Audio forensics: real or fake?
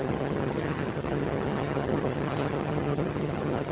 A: fake